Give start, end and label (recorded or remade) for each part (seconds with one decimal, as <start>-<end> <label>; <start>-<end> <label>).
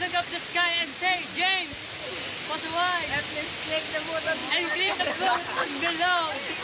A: 0.0-6.6 recorded